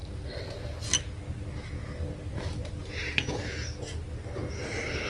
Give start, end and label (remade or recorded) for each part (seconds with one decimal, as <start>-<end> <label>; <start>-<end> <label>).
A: 0.0-5.1 recorded

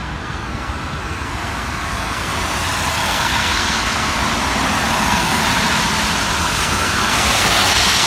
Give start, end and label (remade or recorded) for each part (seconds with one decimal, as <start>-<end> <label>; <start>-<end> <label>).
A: 0.0-2.3 remade; 2.3-2.9 recorded; 2.9-4.2 remade; 4.2-5.0 recorded; 5.0-5.4 remade; 5.4-6.4 recorded; 6.4-8.1 remade

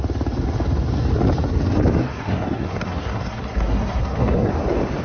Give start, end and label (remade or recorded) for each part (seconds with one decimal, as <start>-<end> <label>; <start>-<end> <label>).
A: 0.0-2.0 recorded; 2.0-4.5 remade; 4.5-5.0 recorded

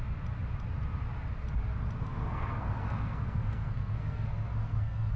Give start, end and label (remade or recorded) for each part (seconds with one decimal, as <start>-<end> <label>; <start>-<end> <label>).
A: 0.0-2.0 recorded; 2.0-5.2 remade

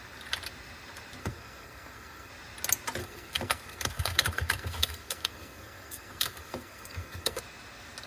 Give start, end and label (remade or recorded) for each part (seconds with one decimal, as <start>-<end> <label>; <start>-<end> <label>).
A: 0.0-1.2 recorded; 1.2-2.3 remade; 2.3-3.0 recorded; 3.0-7.4 remade; 7.4-8.1 recorded

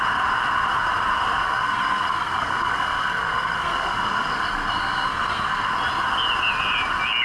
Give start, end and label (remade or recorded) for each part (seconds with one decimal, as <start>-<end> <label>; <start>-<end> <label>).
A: 0.0-1.4 recorded; 1.4-5.7 remade; 5.7-7.2 recorded